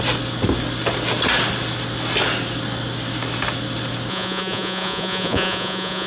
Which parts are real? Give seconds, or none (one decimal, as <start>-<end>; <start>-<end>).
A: 0.0-4.1